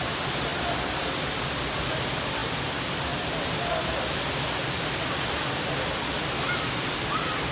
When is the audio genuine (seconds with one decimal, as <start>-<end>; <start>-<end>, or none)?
0.0-7.5